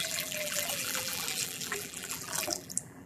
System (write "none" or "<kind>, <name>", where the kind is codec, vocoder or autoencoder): vocoder, BigVGAN v2